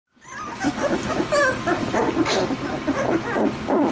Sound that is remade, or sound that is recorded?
recorded